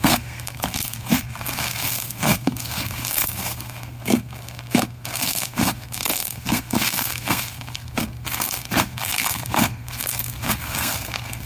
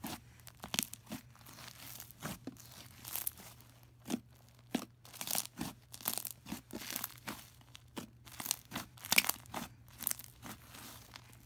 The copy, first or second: first